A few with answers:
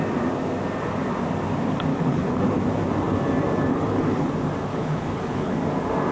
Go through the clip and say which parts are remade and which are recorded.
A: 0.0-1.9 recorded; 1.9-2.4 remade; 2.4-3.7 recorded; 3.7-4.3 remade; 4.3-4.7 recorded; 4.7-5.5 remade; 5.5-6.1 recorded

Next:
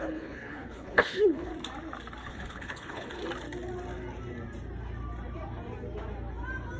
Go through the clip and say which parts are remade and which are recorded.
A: 0.0-1.5 remade; 1.5-2.2 recorded; 2.2-3.2 remade; 3.2-6.8 recorded